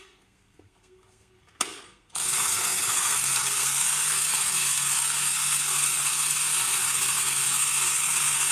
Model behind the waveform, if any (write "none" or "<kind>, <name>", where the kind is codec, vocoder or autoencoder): codec, SNAC